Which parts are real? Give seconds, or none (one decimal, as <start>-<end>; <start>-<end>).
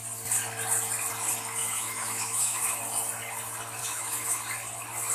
0.0-1.6; 2.8-3.8; 4.4-5.1